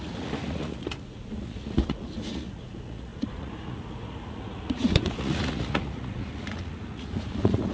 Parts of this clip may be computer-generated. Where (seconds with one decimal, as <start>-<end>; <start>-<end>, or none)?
0.0-7.7